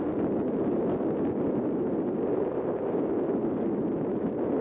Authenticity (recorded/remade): recorded